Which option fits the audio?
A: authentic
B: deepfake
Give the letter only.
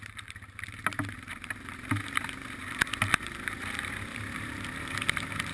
B